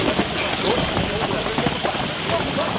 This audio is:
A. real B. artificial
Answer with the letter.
A